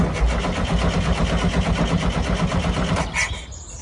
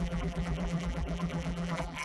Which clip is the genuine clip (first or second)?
first